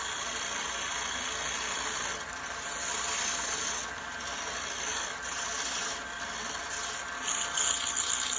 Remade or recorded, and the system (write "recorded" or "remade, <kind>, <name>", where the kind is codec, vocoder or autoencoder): recorded